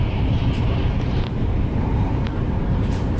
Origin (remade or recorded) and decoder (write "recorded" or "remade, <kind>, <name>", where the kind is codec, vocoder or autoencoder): remade, vocoder, BigVGAN v2